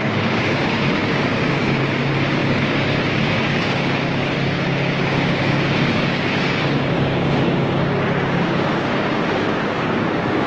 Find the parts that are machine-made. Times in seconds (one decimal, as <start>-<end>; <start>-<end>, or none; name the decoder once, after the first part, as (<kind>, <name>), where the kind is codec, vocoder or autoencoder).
0.0-10.5 (codec, DAC)